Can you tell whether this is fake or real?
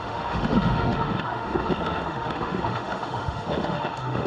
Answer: fake